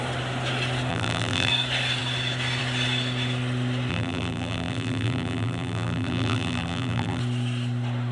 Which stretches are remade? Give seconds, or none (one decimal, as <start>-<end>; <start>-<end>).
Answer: 0.9-1.5; 3.9-7.2